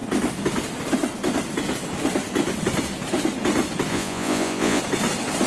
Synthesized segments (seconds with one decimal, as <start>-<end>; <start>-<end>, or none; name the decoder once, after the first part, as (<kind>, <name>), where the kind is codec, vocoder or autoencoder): 3.9-4.8 (vocoder, Vocos)